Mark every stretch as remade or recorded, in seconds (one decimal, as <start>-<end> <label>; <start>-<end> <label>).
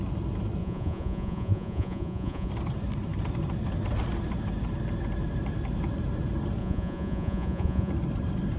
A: 0.0-0.6 recorded; 0.6-2.5 remade; 2.5-6.6 recorded; 6.6-7.9 remade; 7.9-8.6 recorded